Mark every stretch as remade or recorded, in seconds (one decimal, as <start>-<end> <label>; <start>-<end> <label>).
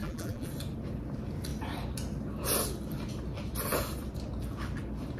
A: 0.0-0.5 remade; 0.5-5.2 recorded